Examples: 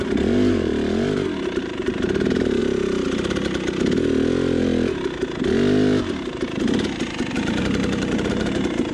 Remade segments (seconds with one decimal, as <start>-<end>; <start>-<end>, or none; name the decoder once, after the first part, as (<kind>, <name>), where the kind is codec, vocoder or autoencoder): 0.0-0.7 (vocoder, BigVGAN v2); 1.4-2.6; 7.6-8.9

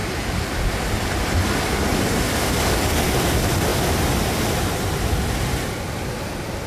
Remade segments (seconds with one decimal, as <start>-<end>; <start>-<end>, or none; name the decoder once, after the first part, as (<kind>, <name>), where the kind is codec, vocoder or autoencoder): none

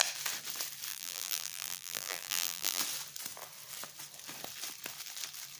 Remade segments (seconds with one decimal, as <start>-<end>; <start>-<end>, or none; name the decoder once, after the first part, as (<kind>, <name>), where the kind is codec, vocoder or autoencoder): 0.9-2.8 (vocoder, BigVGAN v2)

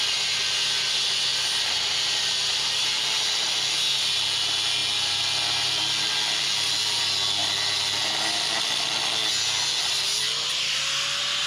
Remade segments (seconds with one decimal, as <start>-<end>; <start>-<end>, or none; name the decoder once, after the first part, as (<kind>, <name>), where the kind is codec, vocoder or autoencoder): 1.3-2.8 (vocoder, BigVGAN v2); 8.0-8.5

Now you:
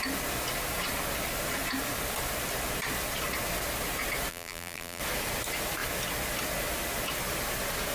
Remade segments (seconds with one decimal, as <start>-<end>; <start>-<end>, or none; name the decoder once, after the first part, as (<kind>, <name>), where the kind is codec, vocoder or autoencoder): 4.3-5.0 (vocoder, BigVGAN v2)

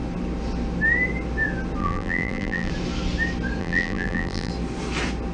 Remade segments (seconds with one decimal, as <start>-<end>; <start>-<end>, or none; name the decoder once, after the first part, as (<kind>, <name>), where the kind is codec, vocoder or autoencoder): 1.8-2.7 (vocoder, BigVGAN v2); 3.6-4.5

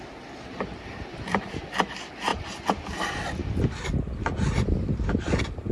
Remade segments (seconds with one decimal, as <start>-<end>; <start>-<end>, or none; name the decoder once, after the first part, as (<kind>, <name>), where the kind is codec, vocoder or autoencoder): 2.3-3.2 (vocoder, BigVGAN v2)

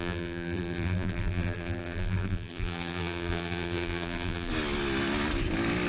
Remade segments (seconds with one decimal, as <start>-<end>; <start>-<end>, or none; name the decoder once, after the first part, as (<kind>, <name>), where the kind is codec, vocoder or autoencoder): 0.0-4.5 (vocoder, BigVGAN v2)